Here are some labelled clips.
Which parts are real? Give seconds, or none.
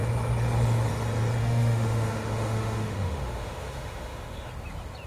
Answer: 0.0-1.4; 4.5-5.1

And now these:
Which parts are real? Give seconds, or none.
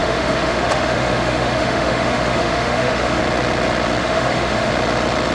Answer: 3.2-4.0; 4.7-5.3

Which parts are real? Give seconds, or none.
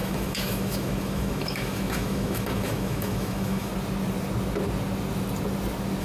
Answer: 3.7-6.0